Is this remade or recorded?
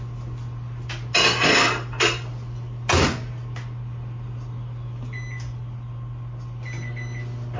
recorded